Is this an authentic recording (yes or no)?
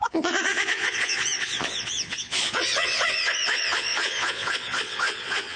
no